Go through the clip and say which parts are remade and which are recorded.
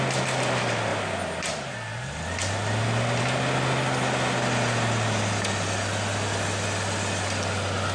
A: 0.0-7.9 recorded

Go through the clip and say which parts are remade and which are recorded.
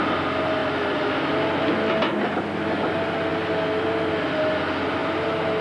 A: 0.0-5.6 recorded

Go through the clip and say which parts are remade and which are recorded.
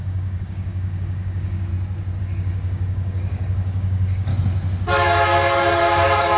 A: 0.0-1.7 remade; 1.7-2.2 recorded; 2.2-4.3 remade; 4.3-5.7 recorded; 5.7-6.4 remade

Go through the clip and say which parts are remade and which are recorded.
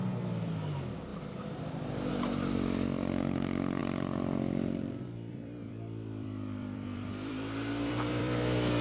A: 0.0-1.1 recorded; 1.1-2.1 remade; 2.1-3.8 recorded; 3.8-8.8 remade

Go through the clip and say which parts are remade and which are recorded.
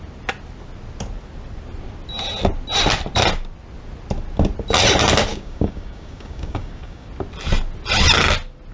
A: 0.0-5.3 recorded; 5.3-7.1 remade; 7.1-8.7 recorded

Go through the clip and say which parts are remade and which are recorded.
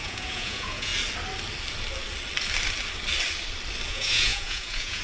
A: 0.0-0.9 remade; 0.9-3.9 recorded; 3.9-5.0 remade